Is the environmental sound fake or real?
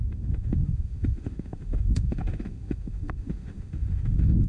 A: fake